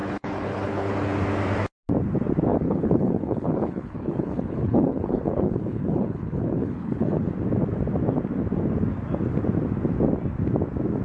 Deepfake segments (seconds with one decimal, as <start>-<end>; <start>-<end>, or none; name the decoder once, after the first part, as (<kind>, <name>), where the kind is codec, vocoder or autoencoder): 0.0-0.9 (codec, HILCodec); 2.5-7.2